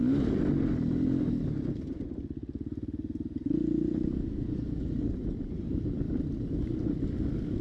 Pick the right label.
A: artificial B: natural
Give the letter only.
B